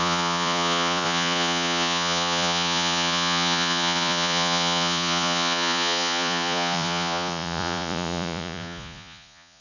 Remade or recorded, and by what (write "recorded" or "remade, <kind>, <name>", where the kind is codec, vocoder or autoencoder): remade, vocoder, Vocos